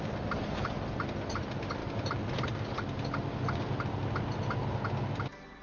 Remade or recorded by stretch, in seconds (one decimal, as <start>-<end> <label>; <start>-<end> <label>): 0.0-5.6 recorded